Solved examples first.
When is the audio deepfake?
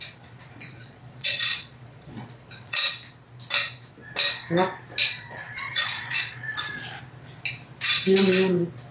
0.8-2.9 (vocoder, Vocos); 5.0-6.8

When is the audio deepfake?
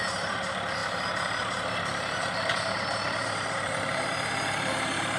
0.0-5.2 (vocoder, BigVGAN v2)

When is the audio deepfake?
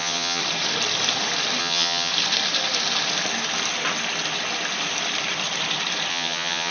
0.0-0.4 (vocoder, HiFi-GAN); 1.6-2.1; 6.1-6.7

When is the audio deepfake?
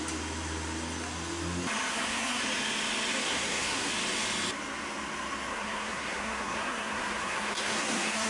1.9-2.4 (codec, SNAC); 3.2-3.9; 5.5-8.3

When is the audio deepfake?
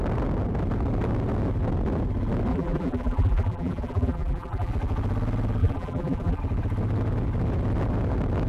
2.5-4.7 (vocoder, BigVGAN v2); 5.6-6.4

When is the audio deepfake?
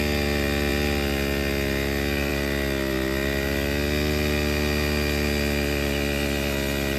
none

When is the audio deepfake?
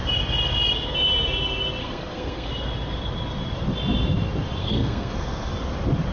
1.8-2.5 (codec, SNAC); 4.6-5.5